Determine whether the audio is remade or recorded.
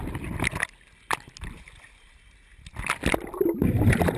recorded